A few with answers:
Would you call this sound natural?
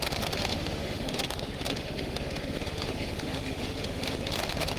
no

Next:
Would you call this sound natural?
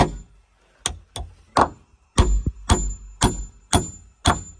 yes